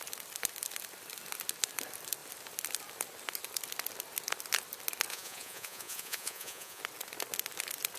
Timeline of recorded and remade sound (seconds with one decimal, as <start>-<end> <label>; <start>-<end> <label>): 0.0-5.1 recorded; 5.1-6.8 remade; 6.8-8.0 recorded